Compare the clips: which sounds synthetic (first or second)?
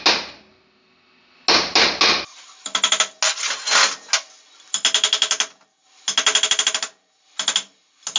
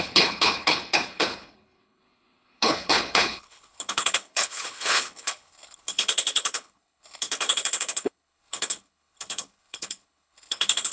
second